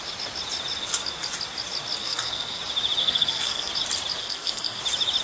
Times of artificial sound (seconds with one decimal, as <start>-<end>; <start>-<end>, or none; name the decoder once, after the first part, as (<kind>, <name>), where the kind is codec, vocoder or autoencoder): 2.0-2.6 (codec, SNAC); 3.0-3.7; 4.2-4.8